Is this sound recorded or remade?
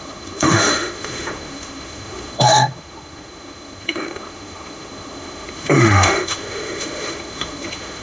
remade